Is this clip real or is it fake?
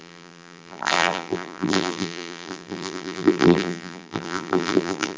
fake